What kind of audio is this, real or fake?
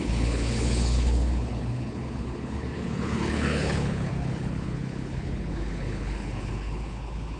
fake